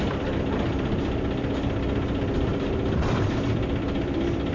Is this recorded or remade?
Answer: remade